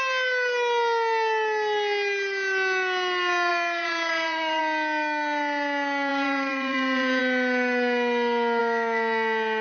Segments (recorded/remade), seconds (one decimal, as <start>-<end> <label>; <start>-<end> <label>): 0.0-3.5 recorded; 3.5-4.6 remade; 4.6-6.1 recorded; 6.1-7.2 remade; 7.2-9.6 recorded